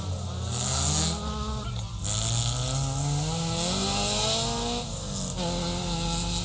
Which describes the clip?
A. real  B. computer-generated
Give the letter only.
A